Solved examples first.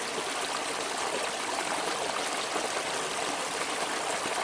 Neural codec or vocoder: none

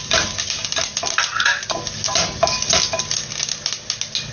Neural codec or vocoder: none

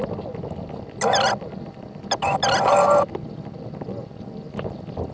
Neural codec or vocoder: none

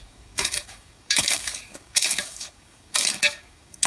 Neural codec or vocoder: codec, DAC